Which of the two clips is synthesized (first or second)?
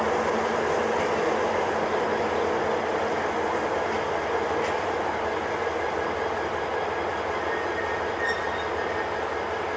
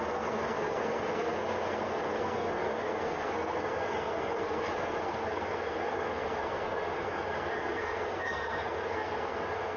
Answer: second